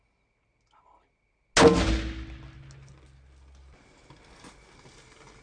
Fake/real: real